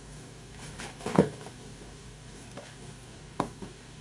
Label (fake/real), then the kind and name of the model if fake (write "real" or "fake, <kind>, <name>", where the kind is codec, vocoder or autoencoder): fake, codec, DAC